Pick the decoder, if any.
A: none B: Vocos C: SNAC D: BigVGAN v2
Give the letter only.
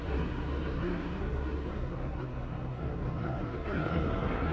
C